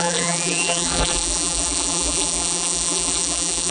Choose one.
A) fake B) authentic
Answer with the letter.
A